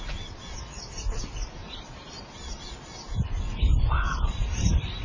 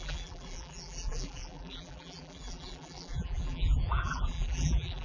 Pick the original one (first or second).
first